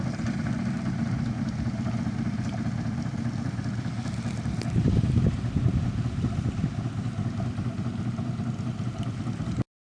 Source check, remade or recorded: recorded